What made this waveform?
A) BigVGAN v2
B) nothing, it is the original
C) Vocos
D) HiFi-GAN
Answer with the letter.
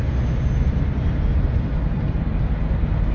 B